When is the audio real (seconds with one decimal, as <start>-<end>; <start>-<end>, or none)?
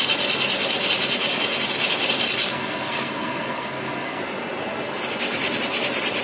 0.0-2.5; 4.2-6.2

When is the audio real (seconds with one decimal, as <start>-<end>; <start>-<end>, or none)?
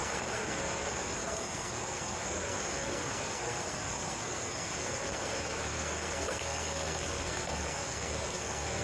none